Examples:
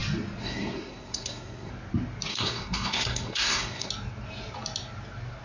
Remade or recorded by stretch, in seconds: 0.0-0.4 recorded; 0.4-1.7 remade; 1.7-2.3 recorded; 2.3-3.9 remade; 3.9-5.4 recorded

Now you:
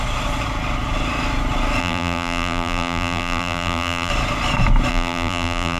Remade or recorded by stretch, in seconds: 0.0-1.8 recorded; 1.8-4.1 remade; 4.1-4.9 recorded; 4.9-5.8 remade

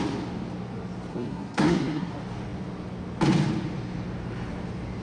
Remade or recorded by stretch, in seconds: 0.0-1.1 recorded; 1.1-2.1 remade; 2.1-5.0 recorded

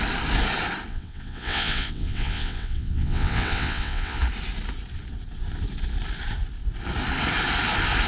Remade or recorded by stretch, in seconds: 0.0-0.9 recorded; 0.9-4.2 remade; 4.2-8.1 recorded

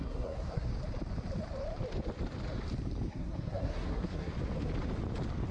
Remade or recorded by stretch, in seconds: 0.0-0.7 remade; 0.7-3.1 recorded; 3.1-4.3 remade; 4.3-5.5 recorded

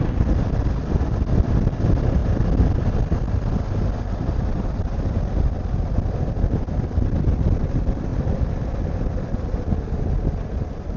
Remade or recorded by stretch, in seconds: 0.0-11.0 recorded

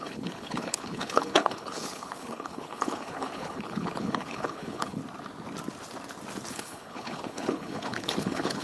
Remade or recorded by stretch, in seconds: 0.0-5.0 remade; 5.0-6.5 recorded; 6.5-8.6 remade

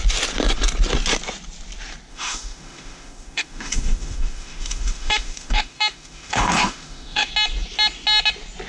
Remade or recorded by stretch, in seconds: 0.0-2.1 recorded; 2.1-7.3 remade; 7.3-8.7 recorded